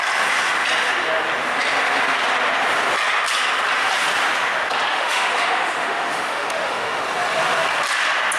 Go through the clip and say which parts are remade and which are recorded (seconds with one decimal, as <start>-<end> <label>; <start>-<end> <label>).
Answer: 0.0-4.9 recorded; 4.9-7.0 remade; 7.0-8.4 recorded